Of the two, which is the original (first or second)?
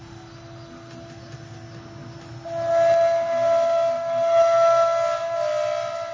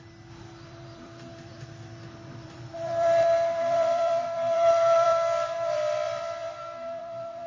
first